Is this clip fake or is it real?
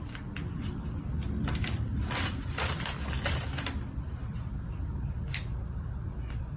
fake